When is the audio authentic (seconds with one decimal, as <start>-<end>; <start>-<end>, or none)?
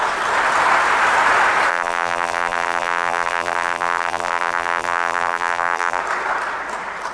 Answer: 0.0-1.7; 6.0-7.1